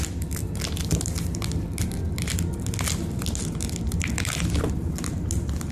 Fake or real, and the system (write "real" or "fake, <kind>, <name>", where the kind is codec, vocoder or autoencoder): real